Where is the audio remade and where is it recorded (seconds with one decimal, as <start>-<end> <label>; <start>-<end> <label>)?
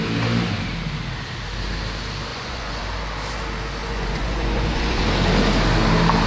0.0-2.3 recorded; 2.3-2.8 remade; 2.8-3.8 recorded; 3.8-5.0 remade; 5.0-6.3 recorded